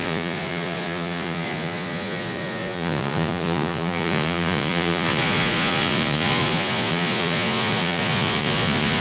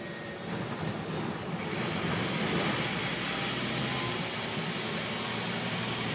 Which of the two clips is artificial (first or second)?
first